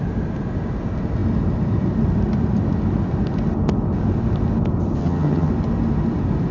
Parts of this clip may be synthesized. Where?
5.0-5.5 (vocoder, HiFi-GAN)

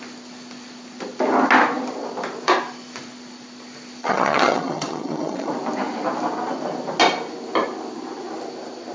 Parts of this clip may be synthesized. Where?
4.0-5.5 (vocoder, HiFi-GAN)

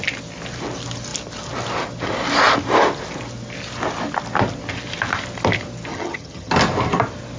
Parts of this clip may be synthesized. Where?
5.9-6.5 (vocoder, HiFi-GAN)

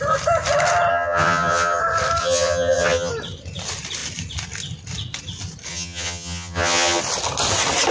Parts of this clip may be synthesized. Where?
0.9-1.8 (vocoder, HiFi-GAN); 2.2-3.1; 5.7-7.0

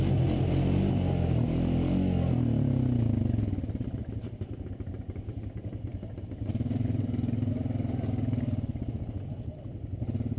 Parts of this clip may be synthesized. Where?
none